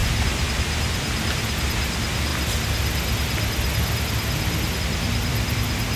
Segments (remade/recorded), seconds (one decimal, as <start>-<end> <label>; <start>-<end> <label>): 0.0-6.0 recorded